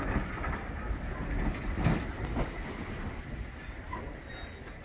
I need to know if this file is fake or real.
real